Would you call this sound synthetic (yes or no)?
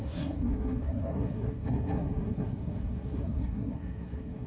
yes